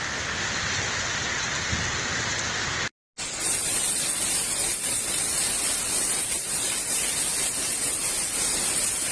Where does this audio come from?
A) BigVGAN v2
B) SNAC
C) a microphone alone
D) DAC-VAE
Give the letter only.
C